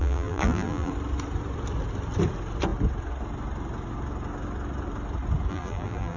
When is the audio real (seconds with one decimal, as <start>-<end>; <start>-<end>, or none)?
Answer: 0.9-5.5